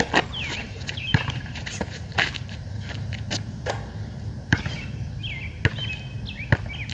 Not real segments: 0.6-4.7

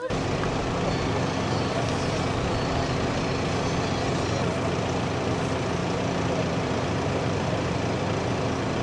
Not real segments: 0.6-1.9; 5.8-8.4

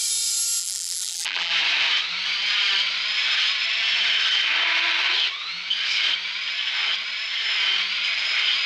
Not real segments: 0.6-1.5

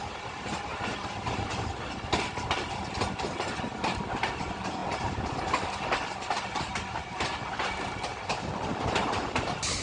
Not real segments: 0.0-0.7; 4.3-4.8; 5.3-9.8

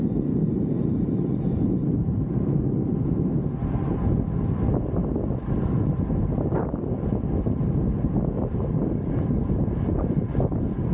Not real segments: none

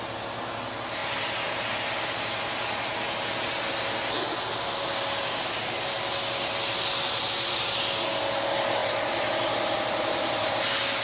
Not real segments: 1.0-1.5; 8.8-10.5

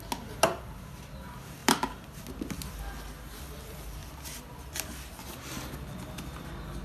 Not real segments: 1.6-2.2; 4.0-4.9

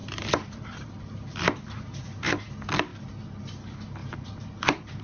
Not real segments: 0.0-2.5; 4.0-5.0